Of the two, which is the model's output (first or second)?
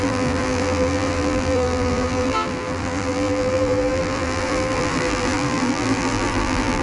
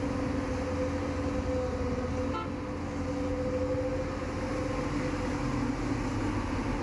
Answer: first